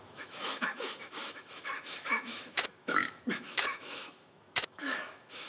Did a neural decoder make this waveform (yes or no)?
yes